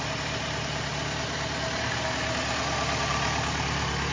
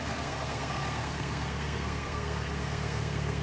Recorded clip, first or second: first